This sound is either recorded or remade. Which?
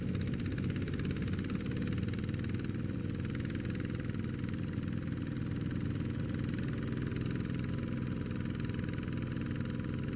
recorded